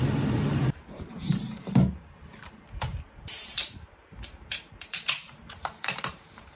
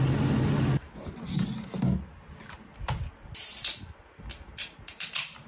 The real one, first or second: second